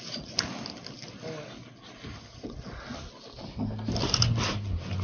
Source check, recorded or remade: recorded